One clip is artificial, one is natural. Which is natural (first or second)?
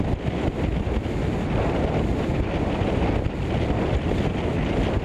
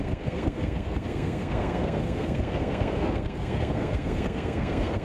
first